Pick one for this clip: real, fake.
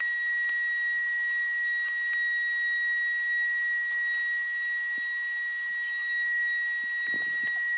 real